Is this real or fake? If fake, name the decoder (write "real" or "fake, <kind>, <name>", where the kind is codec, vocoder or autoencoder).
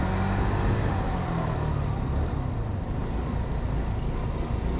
real